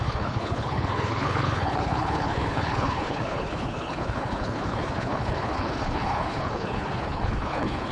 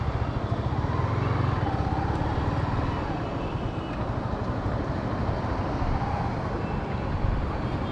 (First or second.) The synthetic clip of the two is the first